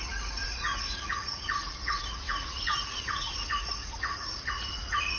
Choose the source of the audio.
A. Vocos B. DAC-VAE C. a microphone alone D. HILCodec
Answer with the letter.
A